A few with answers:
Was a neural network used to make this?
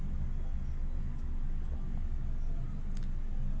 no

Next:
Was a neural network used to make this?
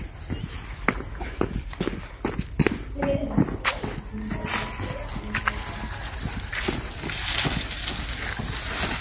no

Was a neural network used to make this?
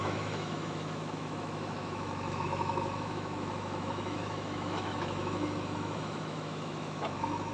yes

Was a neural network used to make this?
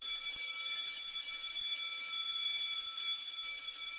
yes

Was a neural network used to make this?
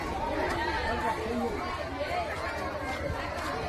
no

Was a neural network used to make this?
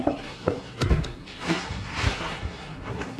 yes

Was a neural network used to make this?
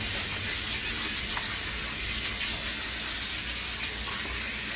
no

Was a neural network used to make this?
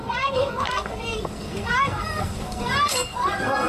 yes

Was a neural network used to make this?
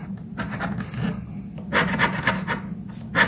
no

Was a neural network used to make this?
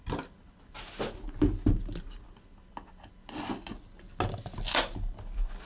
no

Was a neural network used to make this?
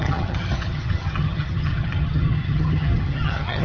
yes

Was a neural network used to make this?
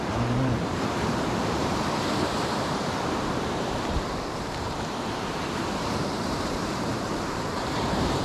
yes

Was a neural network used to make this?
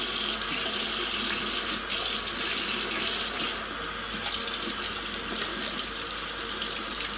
no